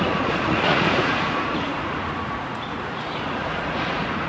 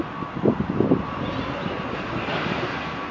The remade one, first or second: first